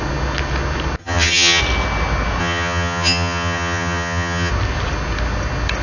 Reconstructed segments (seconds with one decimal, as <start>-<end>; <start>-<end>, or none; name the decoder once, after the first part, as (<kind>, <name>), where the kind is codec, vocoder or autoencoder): 1.0-1.6 (vocoder, HiFi-GAN); 2.4-4.5